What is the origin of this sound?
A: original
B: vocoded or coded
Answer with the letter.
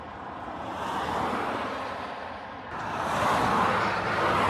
A